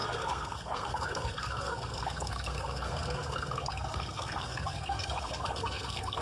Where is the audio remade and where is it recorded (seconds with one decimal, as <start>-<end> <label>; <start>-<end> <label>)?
0.0-6.2 remade